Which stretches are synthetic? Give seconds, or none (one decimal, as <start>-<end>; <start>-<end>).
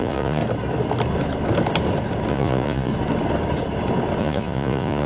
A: 0.0-0.4; 2.3-2.9; 4.2-5.1